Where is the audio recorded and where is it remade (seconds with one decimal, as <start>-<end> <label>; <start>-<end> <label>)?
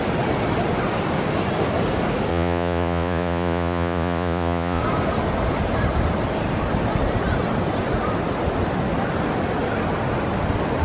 0.0-2.3 recorded; 2.3-4.8 remade; 4.8-10.8 recorded